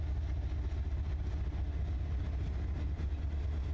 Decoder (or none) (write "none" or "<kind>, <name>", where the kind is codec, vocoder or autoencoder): none